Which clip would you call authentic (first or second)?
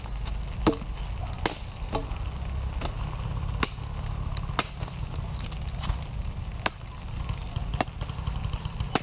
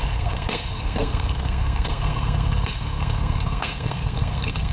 first